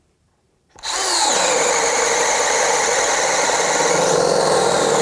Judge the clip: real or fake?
real